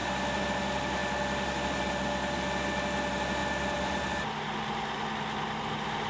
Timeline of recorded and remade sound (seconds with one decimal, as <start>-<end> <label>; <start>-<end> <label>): 0.0-0.6 remade; 0.6-1.0 recorded; 1.0-1.9 remade; 1.9-3.4 recorded; 3.4-4.2 remade; 4.2-6.1 recorded